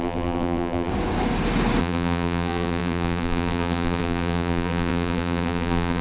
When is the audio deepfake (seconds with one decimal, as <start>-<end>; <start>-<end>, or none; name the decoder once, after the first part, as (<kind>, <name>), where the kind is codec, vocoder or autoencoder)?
0.0-0.9 (vocoder, BigVGAN v2); 1.8-6.0